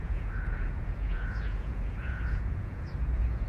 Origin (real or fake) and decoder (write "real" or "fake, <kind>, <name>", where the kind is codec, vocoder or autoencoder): fake, vocoder, Vocos